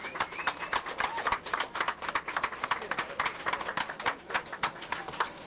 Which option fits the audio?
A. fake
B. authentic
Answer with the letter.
B